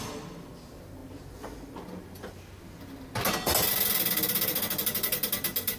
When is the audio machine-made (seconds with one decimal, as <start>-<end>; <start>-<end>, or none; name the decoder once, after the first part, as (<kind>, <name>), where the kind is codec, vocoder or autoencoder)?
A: none